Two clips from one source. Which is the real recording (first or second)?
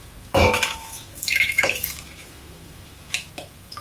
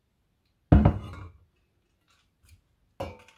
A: second